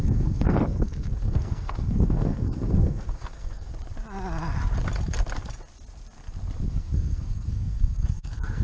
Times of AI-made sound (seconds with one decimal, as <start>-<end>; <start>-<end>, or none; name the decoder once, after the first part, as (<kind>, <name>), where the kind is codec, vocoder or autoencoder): 0.0-3.7 (codec, SNAC); 6.7-8.6